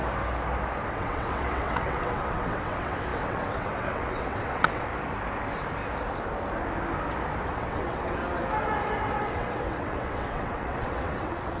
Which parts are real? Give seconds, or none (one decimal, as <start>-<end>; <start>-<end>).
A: 0.0-0.9; 4.9-7.5; 8.2-9.1

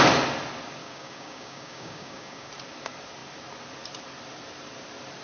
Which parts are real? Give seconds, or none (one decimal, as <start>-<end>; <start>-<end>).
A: 0.0-0.8; 2.5-5.2